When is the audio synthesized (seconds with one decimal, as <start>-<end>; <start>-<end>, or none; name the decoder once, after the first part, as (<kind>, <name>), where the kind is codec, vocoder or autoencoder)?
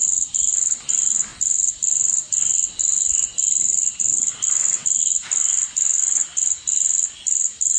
none